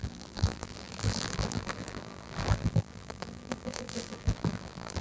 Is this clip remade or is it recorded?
remade